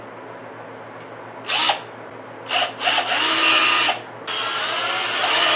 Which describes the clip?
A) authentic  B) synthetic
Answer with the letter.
A